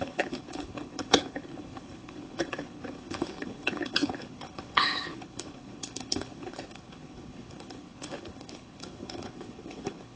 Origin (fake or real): fake